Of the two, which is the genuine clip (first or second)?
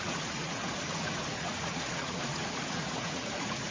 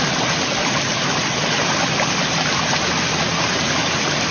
second